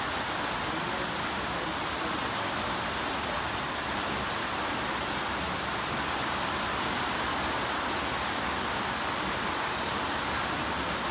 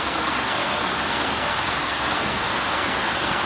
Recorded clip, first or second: first